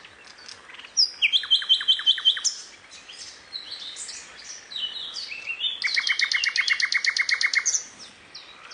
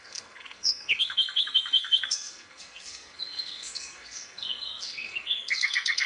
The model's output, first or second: second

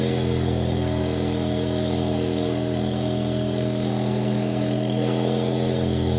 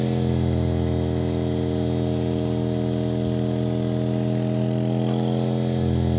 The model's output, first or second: first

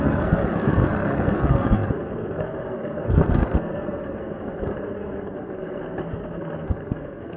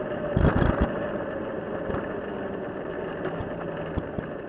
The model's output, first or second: first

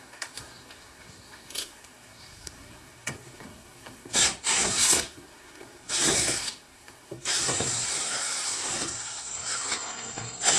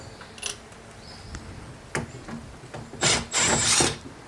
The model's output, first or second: first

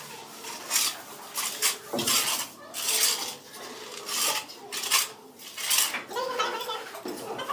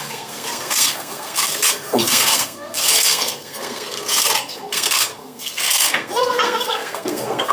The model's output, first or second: second